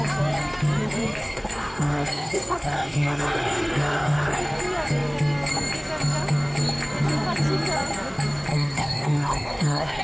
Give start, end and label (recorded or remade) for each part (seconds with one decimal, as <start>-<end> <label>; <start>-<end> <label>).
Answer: 0.0-1.2 recorded; 1.2-4.4 remade; 4.4-8.5 recorded; 8.5-10.0 remade